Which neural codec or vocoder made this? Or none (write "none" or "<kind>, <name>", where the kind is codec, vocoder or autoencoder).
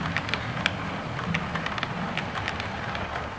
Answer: none